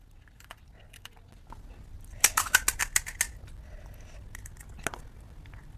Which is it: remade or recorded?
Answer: recorded